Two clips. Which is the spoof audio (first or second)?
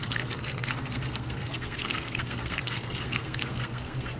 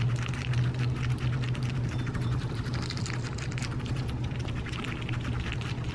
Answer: first